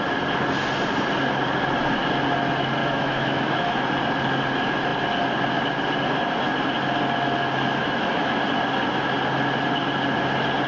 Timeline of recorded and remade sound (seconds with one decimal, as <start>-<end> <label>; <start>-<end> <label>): 0.0-2.8 recorded; 2.8-3.8 remade; 3.8-7.8 recorded; 7.8-8.4 remade; 8.4-10.7 recorded